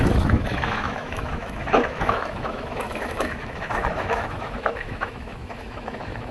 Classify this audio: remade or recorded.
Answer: remade